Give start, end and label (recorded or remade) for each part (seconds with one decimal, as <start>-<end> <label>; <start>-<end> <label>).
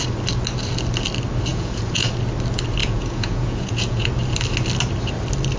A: 0.0-1.5 recorded; 1.5-2.1 remade; 2.1-2.8 recorded; 2.8-4.1 remade; 4.1-5.6 recorded